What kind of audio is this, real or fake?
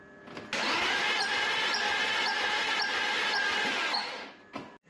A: real